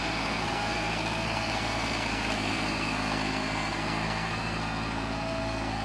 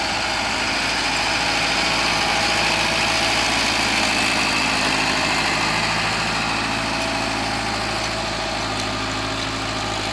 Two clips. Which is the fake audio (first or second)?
first